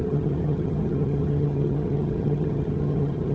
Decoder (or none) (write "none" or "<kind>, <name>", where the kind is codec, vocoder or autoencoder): vocoder, HiFi-GAN